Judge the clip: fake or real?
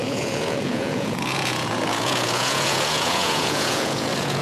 fake